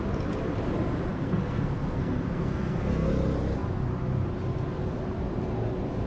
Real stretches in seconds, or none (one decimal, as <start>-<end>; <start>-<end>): 0.0-1.1; 3.1-6.1